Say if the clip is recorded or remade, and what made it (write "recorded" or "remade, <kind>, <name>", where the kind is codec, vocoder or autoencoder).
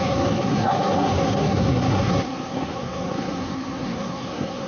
remade, codec, SNAC